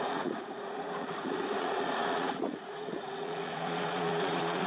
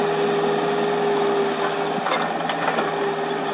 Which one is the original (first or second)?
second